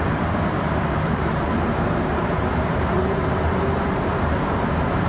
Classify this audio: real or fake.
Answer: fake